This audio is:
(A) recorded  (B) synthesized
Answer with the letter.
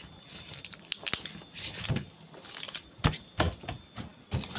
A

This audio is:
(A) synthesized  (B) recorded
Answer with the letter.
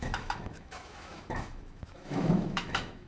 A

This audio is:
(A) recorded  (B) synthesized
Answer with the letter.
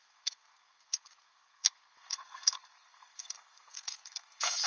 B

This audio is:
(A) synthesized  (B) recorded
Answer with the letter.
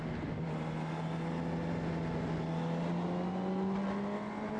B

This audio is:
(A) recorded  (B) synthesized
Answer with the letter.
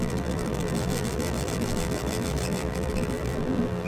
B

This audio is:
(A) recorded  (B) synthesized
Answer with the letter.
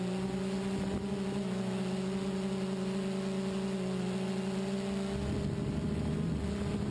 A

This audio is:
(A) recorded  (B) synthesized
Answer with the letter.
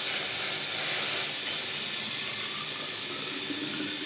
A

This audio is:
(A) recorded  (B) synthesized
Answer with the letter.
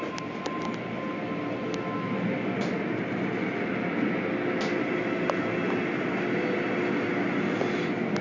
A